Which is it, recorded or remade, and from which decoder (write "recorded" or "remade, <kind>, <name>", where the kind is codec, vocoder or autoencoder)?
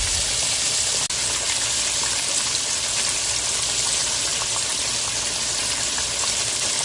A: recorded